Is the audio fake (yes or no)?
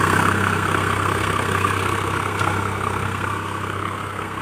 yes